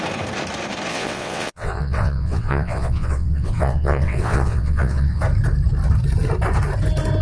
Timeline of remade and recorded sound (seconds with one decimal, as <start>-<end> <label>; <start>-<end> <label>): 0.0-0.9 recorded; 0.9-5.2 remade; 5.2-7.2 recorded